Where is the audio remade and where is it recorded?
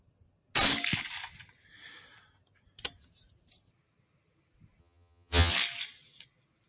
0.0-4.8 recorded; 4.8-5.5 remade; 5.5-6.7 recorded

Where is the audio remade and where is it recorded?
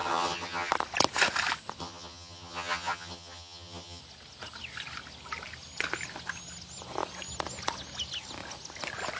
0.0-0.7 remade; 0.7-1.8 recorded; 1.8-4.0 remade; 4.0-9.2 recorded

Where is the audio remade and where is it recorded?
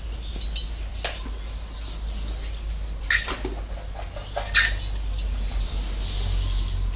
0.0-7.0 recorded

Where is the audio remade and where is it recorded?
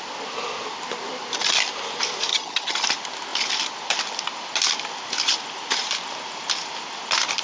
0.0-2.3 recorded; 2.3-2.8 remade; 2.8-7.4 recorded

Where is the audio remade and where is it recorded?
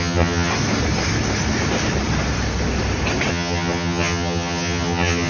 0.0-0.5 remade; 0.5-3.3 recorded; 3.3-5.3 remade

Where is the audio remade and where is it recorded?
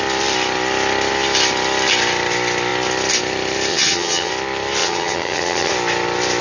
0.0-3.7 recorded; 3.7-4.3 remade; 4.3-4.8 recorded; 4.8-5.7 remade; 5.7-6.4 recorded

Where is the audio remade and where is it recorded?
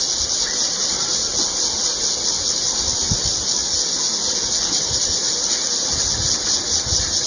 0.0-7.3 recorded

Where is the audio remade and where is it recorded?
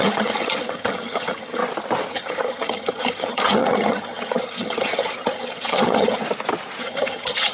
0.0-1.6 remade; 1.6-2.1 recorded; 2.1-6.2 remade; 6.2-6.8 recorded; 6.8-7.5 remade